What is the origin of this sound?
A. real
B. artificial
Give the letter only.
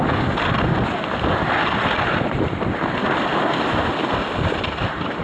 A